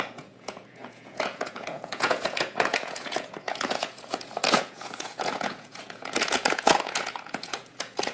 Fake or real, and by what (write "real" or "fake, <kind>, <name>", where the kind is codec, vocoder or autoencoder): fake, vocoder, Vocos